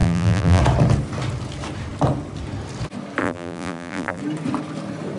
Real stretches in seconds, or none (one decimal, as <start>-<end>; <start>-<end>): 0.6-3.2; 4.2-5.2